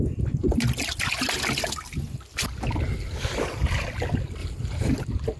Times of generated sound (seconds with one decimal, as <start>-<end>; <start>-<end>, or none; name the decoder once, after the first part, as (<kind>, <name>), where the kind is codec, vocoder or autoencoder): 4.4-4.9 (vocoder, BigVGAN v2)

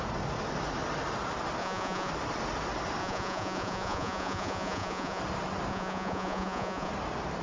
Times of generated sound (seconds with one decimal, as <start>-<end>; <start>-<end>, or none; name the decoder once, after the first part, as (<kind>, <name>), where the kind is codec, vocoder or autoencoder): 1.6-2.1 (vocoder, Vocos); 3.0-5.2; 5.7-6.9

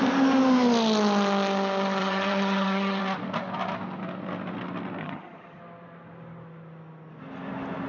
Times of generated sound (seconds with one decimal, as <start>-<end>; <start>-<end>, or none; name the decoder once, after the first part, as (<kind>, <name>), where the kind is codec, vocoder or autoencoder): 2.0-3.0 (vocoder, HiFi-GAN); 5.0-5.6

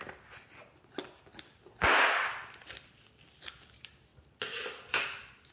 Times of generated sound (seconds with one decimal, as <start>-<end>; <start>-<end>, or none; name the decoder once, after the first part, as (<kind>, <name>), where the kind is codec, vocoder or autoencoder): none

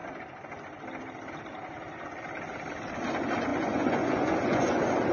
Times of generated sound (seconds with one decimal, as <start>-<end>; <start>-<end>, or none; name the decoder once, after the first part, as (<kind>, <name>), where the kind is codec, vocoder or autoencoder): 3.5-5.1 (vocoder, Vocos)

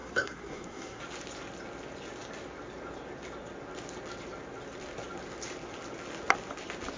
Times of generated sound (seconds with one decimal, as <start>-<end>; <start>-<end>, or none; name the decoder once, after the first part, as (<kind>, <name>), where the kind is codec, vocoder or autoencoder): 0.0-1.0 (codec, SNAC)

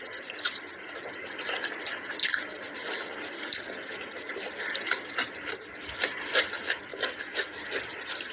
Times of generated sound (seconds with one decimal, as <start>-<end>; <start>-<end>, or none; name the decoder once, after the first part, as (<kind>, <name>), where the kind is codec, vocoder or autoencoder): 2.5-5.1 (vocoder, BigVGAN v2); 6.9-8.3

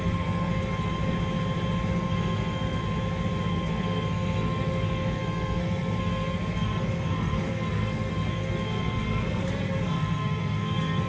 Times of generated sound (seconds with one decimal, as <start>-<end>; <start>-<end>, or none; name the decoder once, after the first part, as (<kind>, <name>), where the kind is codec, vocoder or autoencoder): 0.0-0.5 (codec, SNAC); 1.9-2.8; 3.5-11.1